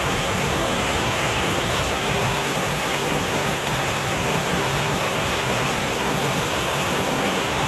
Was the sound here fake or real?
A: fake